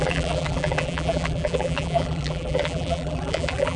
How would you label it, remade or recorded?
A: remade